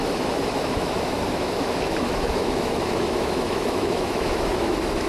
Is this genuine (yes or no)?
no